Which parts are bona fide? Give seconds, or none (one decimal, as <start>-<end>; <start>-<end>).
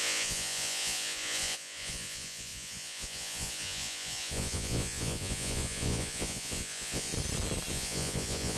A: 7.1-7.7